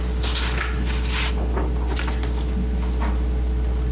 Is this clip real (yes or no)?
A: yes